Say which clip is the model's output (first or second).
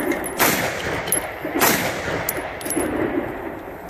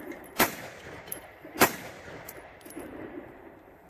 second